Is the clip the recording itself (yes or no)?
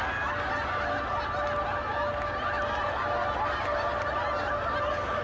yes